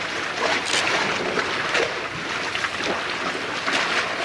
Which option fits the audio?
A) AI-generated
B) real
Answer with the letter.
B